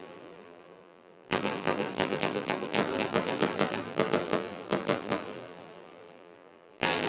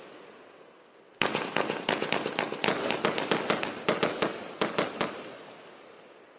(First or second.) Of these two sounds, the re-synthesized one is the first